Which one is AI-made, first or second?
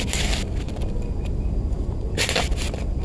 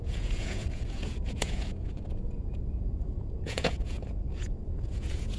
second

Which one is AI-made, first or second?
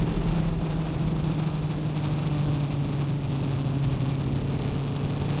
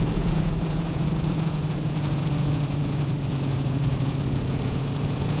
second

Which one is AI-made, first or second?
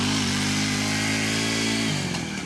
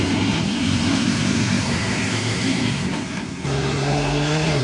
second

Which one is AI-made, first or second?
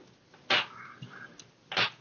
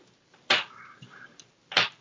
second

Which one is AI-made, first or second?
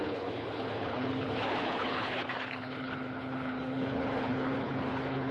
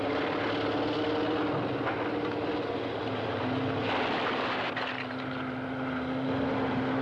first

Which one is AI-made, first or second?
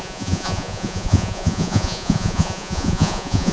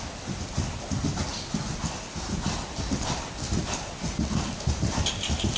first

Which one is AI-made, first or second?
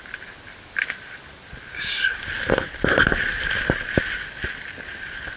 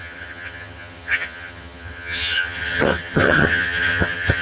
second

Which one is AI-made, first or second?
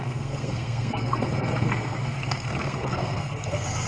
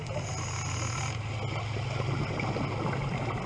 first